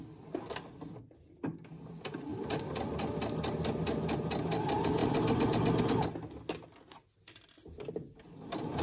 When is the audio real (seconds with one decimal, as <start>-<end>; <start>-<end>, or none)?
0.0-8.8